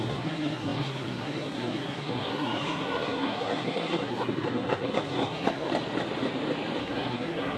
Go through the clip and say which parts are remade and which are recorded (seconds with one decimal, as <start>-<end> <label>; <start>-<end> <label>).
0.0-5.7 remade; 5.7-6.8 recorded; 6.8-7.6 remade

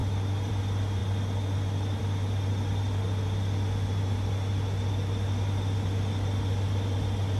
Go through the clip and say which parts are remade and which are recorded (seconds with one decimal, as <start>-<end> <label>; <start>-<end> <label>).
0.0-7.4 recorded

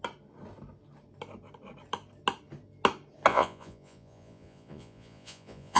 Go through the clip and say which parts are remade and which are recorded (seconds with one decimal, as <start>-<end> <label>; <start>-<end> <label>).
0.0-3.3 recorded; 3.3-5.8 remade

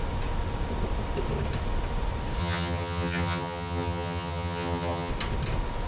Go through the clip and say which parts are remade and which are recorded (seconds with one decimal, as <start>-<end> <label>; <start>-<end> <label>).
0.0-2.4 recorded; 2.4-5.1 remade; 5.1-5.9 recorded

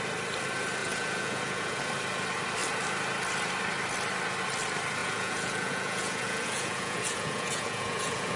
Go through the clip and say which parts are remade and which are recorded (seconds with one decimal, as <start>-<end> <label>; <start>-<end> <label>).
0.0-0.8 recorded; 0.8-1.8 remade; 1.8-5.0 recorded; 5.0-8.4 remade

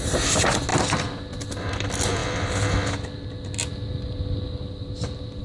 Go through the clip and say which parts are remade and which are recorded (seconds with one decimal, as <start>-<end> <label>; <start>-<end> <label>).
0.0-5.4 recorded

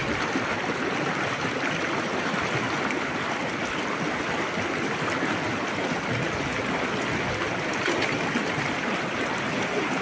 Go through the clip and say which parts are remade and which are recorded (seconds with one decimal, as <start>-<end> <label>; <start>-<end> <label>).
0.0-10.0 recorded